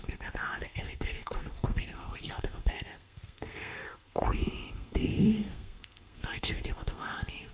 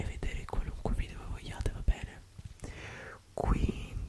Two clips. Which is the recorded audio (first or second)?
second